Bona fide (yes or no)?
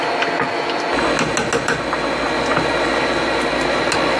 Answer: yes